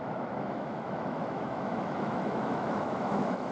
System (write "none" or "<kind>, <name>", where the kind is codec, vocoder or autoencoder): autoencoder, DAC-VAE